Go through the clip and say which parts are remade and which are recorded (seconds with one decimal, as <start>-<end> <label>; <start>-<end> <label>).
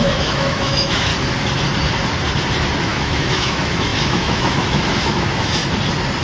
0.0-1.1 remade; 1.1-2.8 recorded; 2.8-5.6 remade; 5.6-6.2 recorded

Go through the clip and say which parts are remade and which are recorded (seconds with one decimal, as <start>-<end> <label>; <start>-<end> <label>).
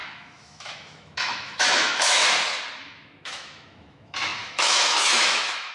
0.0-2.2 remade; 2.2-2.8 recorded; 2.8-5.7 remade